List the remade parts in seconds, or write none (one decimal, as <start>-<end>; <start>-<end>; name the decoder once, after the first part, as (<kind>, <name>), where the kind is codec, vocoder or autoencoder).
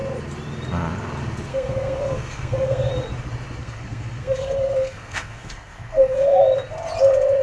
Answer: 1.5-2.9 (codec, SNAC); 3.6-6.4